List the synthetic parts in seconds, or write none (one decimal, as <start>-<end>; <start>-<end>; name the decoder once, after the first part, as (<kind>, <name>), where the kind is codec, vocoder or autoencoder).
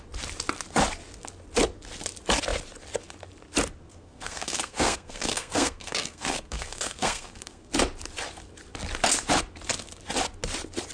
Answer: 3.9-7.7 (codec, SNAC)